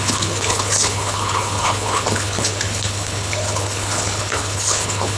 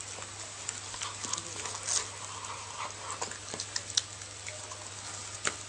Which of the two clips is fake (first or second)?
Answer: first